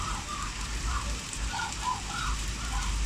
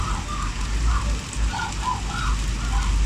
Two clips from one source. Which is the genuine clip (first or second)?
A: second